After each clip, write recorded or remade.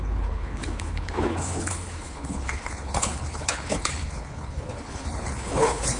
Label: remade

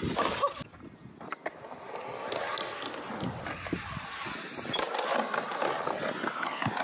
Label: recorded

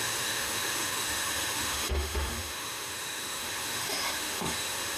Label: remade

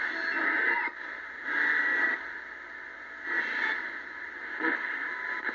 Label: recorded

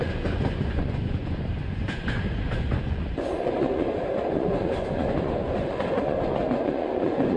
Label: remade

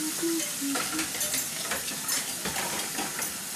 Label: recorded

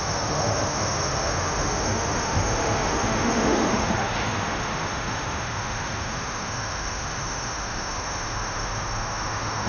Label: remade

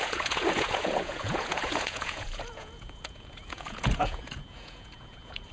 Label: remade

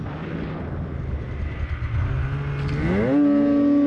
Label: recorded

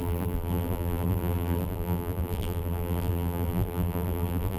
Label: remade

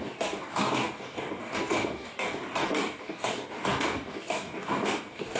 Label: remade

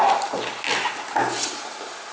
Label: recorded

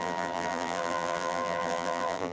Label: remade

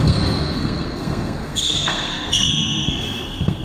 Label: remade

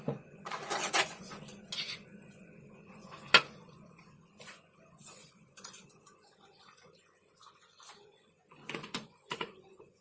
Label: remade